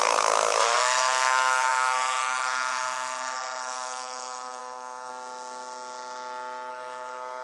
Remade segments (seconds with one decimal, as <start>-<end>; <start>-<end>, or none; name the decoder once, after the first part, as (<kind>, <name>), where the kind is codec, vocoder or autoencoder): 0.0-5.1 (codec, SNAC); 6.7-7.4